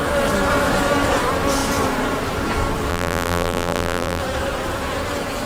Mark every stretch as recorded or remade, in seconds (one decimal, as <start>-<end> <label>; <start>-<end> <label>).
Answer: 0.0-2.9 recorded; 2.9-4.2 remade; 4.2-5.5 recorded